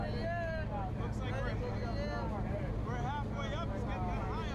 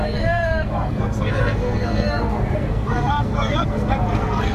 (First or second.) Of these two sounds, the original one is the first